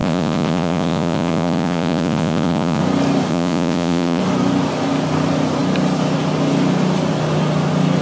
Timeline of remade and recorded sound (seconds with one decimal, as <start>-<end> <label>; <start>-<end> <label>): 0.0-2.8 remade; 2.8-3.3 recorded; 3.3-4.2 remade; 4.2-8.0 recorded